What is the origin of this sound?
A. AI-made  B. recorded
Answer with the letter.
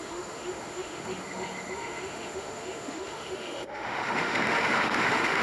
A